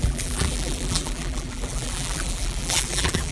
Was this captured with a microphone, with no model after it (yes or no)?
no